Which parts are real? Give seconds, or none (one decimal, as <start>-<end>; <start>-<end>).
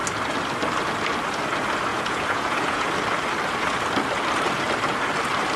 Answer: 0.0-1.9; 2.9-5.6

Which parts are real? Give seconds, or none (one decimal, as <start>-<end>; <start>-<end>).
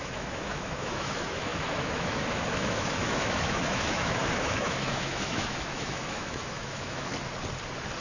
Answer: 7.1-8.0